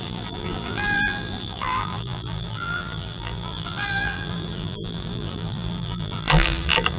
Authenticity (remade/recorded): remade